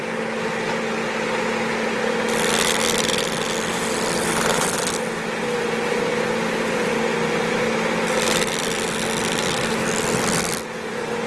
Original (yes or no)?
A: yes